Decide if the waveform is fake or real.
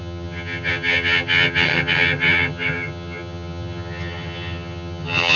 fake